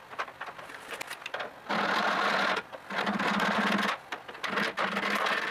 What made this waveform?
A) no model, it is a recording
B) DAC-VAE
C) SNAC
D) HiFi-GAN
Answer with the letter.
A